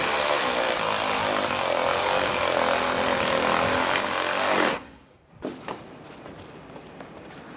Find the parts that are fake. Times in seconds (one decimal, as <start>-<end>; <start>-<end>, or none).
4.7-5.3